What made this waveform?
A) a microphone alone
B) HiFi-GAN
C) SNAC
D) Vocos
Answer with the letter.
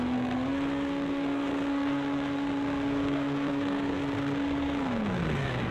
C